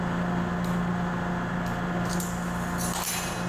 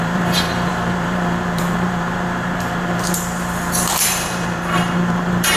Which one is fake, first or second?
second